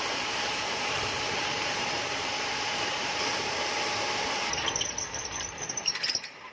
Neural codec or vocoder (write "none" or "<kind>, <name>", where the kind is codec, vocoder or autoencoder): vocoder, BigVGAN v2